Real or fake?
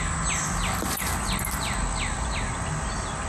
real